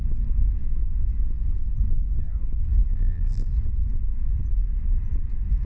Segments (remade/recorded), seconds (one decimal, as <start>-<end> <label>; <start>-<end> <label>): 0.0-2.9 recorded; 2.9-3.5 remade; 3.5-5.6 recorded